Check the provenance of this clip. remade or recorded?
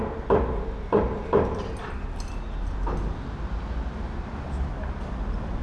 recorded